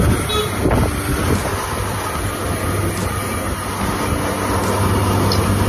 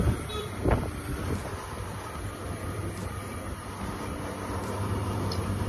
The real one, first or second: first